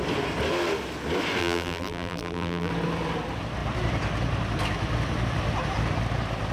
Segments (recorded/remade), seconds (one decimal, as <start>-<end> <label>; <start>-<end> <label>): 0.0-1.4 recorded; 1.4-2.7 remade; 2.7-6.5 recorded